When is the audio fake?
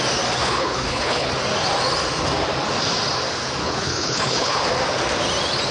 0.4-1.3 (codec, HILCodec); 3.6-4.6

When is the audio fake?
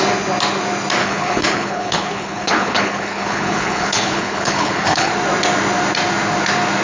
1.0-5.1 (codec, HILCodec)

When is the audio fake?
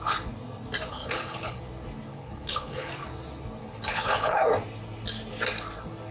0.9-1.6 (codec, HILCodec); 2.1-2.9; 3.6-4.5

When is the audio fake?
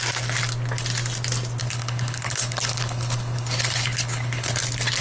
1.6-4.6 (codec, HILCodec)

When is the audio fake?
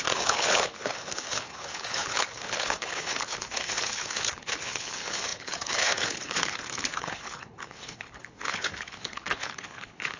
0.0-10.2 (codec, HILCodec)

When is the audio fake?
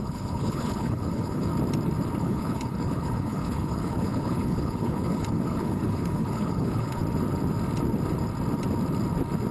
0.0-1.5 (codec, HILCodec); 2.2-7.0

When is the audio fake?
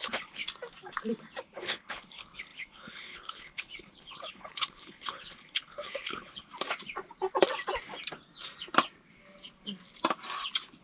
0.0-0.4 (codec, HILCodec); 1.4-6.5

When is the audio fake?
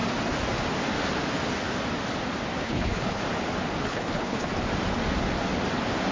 2.6-3.2 (codec, HILCodec); 3.8-4.5